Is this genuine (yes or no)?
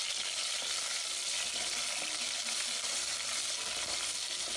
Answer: yes